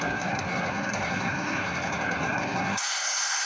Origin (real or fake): fake